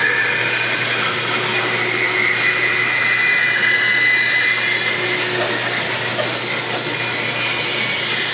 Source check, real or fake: real